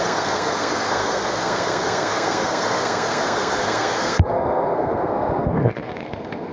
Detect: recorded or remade remade